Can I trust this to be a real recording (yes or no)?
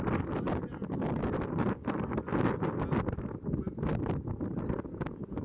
yes